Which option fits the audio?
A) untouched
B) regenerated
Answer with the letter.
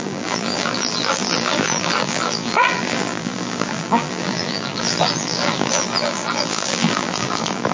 B